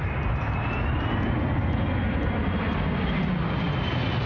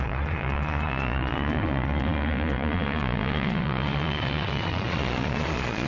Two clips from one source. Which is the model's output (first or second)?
second